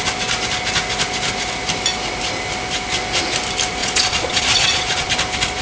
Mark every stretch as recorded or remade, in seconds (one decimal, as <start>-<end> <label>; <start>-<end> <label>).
0.0-3.8 recorded; 3.8-5.1 remade; 5.1-5.6 recorded

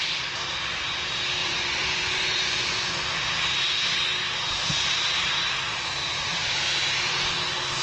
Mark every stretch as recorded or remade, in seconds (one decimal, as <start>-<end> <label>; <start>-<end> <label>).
0.0-1.4 recorded; 1.4-3.0 remade; 3.0-7.8 recorded

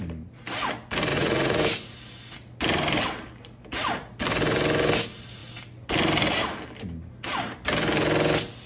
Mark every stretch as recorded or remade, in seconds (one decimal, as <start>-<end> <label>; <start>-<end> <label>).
0.0-1.1 recorded; 1.1-1.6 remade; 1.6-8.7 recorded